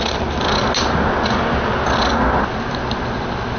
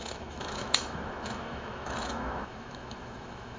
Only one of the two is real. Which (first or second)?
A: first